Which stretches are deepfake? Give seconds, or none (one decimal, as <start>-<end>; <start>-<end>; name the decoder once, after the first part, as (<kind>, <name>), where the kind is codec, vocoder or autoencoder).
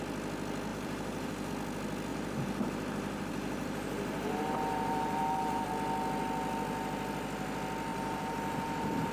0.7-1.5 (vocoder, BigVGAN v2); 2.1-5.7; 7.9-9.1